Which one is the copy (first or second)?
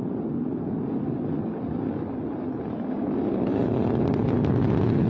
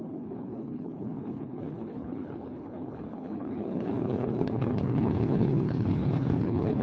second